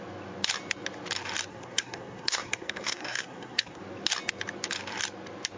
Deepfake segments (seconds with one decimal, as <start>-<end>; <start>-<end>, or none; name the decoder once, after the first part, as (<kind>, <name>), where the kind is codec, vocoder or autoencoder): 1.5-3.8 (codec, SNAC)